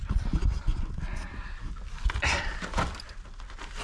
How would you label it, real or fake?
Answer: real